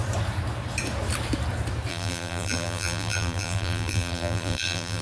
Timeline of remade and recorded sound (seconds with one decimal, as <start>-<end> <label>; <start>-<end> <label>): 0.0-1.9 recorded; 1.9-5.0 remade